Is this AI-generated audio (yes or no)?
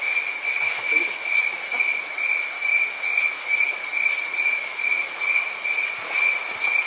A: yes